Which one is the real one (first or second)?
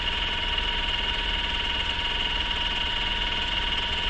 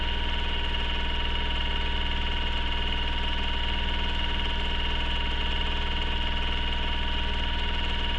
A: second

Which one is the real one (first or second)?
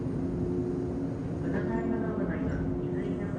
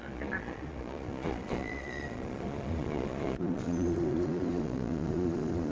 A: first